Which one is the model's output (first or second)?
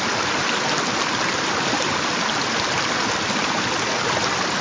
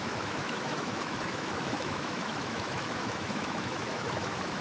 second